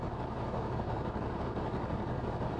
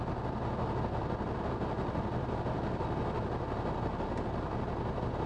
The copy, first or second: first